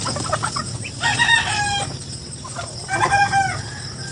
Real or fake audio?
real